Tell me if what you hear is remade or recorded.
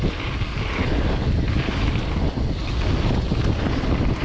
recorded